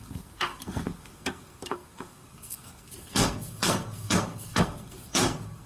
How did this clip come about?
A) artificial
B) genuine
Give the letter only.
A